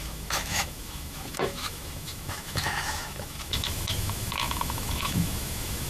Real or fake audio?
fake